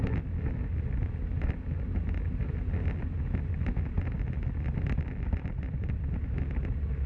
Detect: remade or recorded recorded